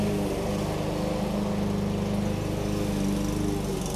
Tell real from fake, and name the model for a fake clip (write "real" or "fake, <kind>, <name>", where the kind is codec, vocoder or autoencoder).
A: real